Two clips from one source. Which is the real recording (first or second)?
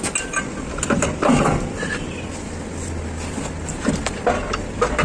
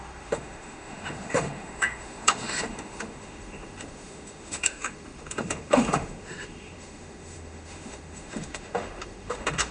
first